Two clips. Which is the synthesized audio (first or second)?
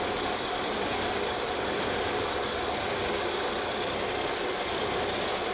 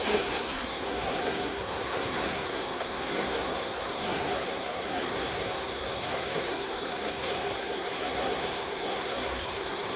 second